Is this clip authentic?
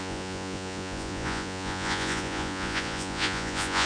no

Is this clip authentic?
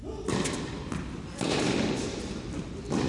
yes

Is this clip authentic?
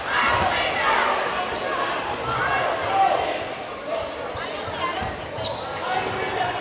yes